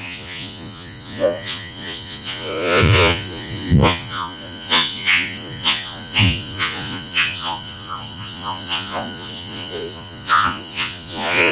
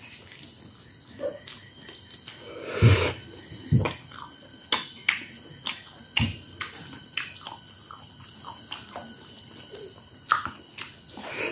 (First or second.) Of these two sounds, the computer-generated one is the first